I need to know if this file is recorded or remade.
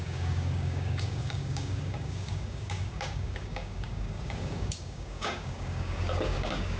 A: remade